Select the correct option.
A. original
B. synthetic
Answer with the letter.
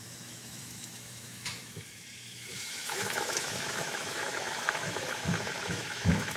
B